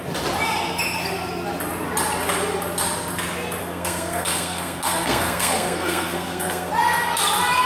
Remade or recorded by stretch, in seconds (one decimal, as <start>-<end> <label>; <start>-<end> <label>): 0.0-3.6 recorded; 3.6-6.7 remade; 6.7-7.7 recorded